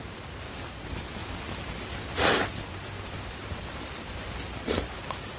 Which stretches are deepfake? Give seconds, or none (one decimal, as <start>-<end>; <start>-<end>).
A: 0.0-1.2; 2.2-5.4